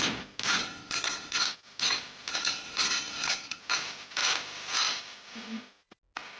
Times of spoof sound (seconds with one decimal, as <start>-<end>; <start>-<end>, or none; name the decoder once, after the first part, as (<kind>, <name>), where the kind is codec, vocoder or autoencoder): 0.6-1.4 (codec, SNAC); 2.3-3.6